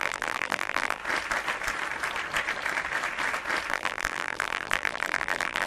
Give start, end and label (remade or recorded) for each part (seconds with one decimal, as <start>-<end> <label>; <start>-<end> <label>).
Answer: 0.0-1.0 remade; 1.0-3.7 recorded; 3.7-5.7 remade